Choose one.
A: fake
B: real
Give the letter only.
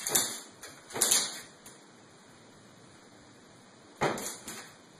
B